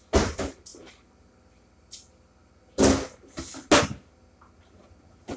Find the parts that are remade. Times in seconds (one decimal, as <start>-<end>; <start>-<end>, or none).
none